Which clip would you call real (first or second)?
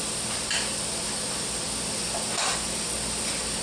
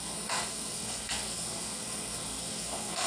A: first